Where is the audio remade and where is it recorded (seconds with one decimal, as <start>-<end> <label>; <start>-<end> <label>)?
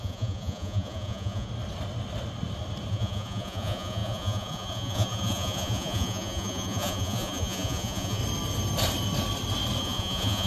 0.0-1.5 remade; 1.5-2.9 recorded; 2.9-8.2 remade; 8.2-9.8 recorded; 9.8-10.5 remade